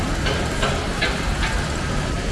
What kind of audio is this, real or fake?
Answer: real